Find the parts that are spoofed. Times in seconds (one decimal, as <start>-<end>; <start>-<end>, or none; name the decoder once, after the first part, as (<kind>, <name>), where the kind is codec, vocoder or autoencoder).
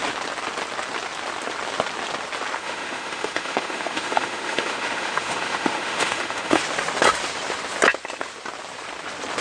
2.6-6.6 (autoencoder, DAC-VAE)